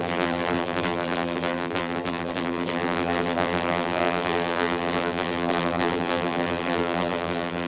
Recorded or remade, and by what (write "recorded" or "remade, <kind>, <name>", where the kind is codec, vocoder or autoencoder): remade, vocoder, BigVGAN v2